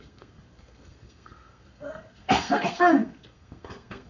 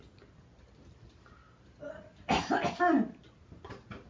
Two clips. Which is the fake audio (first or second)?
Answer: first